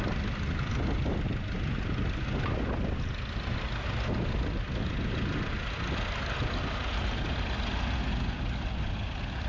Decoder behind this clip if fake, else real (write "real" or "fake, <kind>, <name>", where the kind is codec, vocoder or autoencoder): real